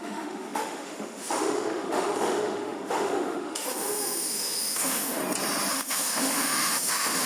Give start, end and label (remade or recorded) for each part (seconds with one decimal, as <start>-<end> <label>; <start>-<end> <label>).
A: 0.0-5.2 remade; 5.2-5.7 recorded; 5.7-7.3 remade